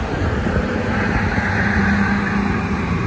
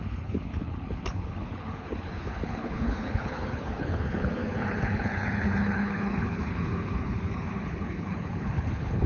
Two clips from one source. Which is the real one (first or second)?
first